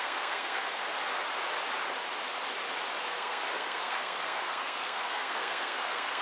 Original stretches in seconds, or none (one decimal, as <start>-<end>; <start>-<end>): 0.8-3.0